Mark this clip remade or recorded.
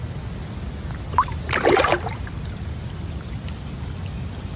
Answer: recorded